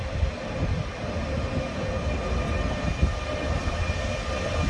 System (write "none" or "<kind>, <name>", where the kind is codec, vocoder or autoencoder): none